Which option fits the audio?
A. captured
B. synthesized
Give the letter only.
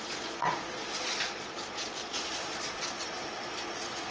B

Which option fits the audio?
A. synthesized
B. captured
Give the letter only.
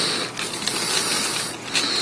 B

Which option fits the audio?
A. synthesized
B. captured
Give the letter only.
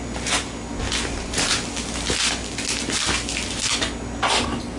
B